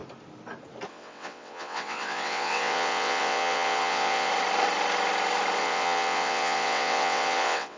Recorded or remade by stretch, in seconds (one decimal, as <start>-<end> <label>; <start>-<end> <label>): 0.0-0.9 recorded; 0.9-4.3 remade; 4.3-5.6 recorded; 5.6-7.8 remade